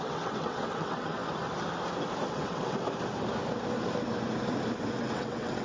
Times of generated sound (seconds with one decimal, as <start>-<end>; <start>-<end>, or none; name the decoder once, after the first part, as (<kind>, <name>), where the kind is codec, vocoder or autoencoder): 0.0-1.2 (vocoder, WaveNeXt); 2.3-2.8; 5.0-5.6